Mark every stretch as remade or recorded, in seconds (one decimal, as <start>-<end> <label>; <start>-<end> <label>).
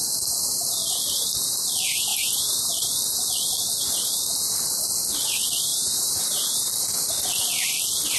0.0-2.1 recorded; 2.1-2.7 remade; 2.7-5.7 recorded; 5.7-6.7 remade; 6.7-8.2 recorded